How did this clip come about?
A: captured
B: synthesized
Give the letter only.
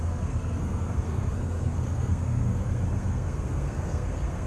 B